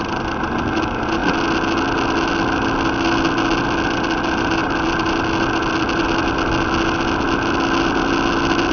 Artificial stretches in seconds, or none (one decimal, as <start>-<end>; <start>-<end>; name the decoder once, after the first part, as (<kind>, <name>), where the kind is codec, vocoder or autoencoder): none